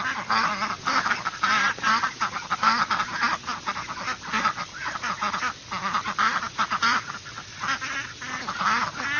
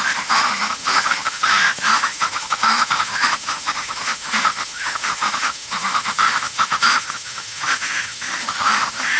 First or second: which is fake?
second